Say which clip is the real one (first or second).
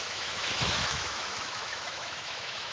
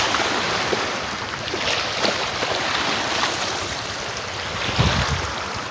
second